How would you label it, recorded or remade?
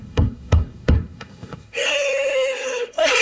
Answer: remade